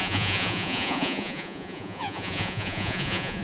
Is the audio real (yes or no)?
no